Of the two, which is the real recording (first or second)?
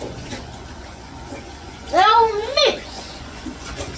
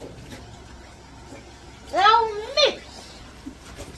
second